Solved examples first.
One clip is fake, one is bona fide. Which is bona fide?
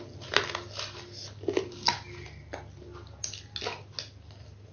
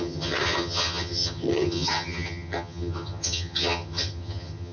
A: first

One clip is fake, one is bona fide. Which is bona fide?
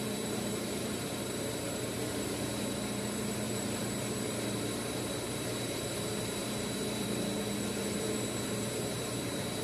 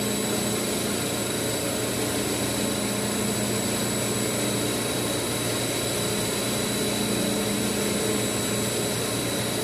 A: second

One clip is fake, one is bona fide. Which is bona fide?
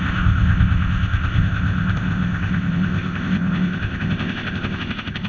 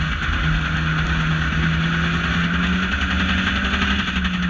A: second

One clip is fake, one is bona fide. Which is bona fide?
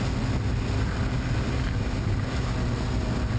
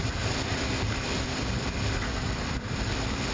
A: first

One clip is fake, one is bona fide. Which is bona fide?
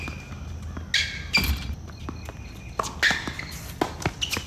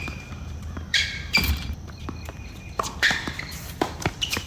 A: first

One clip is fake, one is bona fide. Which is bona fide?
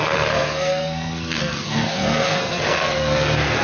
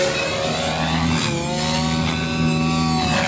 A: second